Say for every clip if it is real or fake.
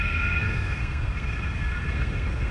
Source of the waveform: fake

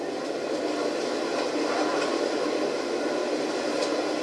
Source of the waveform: real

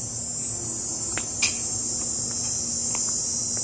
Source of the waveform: real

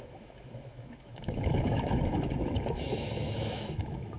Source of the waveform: fake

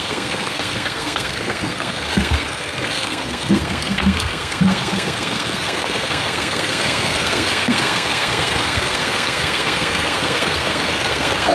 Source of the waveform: fake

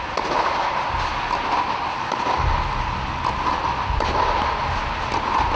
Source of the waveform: real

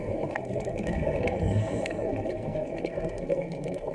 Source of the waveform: fake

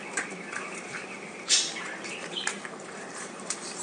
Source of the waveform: fake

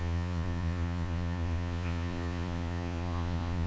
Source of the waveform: fake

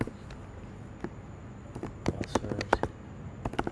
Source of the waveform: real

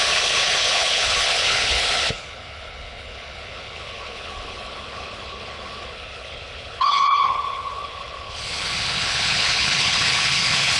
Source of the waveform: fake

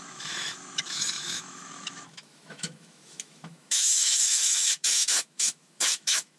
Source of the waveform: fake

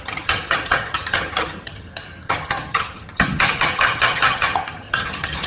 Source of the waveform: fake